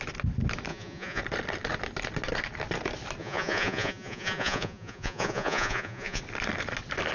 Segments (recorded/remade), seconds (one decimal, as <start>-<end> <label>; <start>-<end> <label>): 0.0-0.7 recorded; 0.7-1.2 remade; 1.2-3.2 recorded; 3.2-6.2 remade; 6.2-7.1 recorded